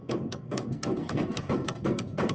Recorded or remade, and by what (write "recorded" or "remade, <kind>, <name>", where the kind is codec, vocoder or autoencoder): remade, codec, SNAC